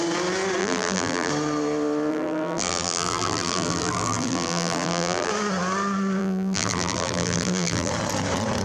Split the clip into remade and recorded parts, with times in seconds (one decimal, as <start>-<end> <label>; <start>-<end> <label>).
0.0-0.6 recorded; 0.6-1.3 remade; 1.3-2.1 recorded; 2.1-5.3 remade; 5.3-6.2 recorded; 6.2-7.9 remade; 7.9-8.6 recorded